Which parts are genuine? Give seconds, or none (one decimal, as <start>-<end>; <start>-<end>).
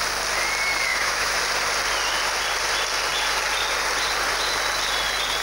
0.0-0.9; 1.4-5.4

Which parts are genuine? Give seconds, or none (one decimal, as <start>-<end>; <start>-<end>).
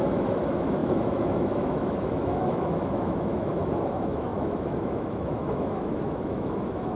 none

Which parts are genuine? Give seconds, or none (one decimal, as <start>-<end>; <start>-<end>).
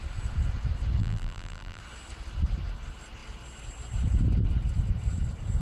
0.0-1.0; 1.8-5.6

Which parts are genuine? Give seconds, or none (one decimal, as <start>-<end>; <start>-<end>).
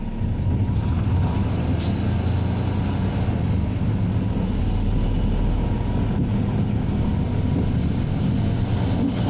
0.0-9.3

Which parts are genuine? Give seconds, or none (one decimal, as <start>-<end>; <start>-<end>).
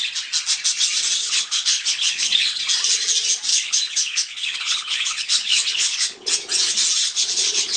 0.0-1.2; 2.6-3.5; 6.3-7.0